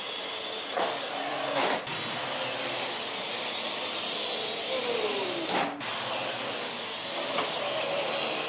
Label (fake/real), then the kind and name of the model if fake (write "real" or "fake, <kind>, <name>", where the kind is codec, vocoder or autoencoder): real